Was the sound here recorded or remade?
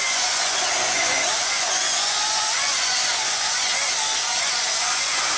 remade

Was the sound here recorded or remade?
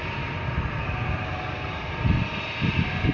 recorded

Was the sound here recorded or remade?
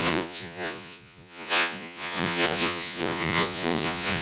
remade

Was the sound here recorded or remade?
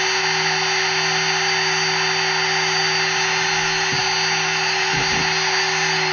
recorded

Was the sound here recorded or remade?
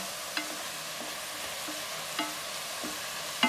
recorded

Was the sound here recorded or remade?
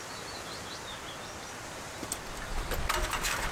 recorded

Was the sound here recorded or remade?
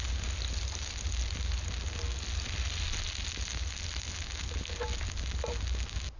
recorded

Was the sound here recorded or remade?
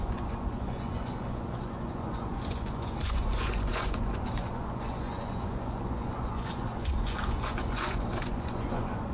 remade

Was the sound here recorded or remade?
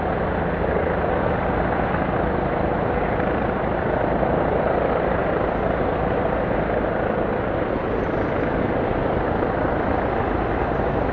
recorded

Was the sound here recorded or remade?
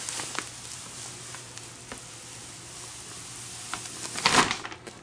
recorded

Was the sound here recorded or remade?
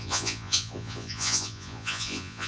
remade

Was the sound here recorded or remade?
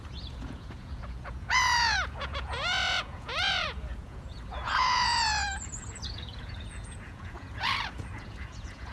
remade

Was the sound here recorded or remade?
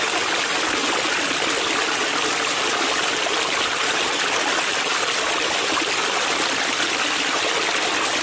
recorded